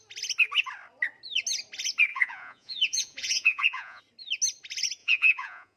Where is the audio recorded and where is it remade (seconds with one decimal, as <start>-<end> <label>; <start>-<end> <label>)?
0.0-2.1 recorded; 2.1-4.0 remade; 4.0-5.0 recorded; 5.0-5.8 remade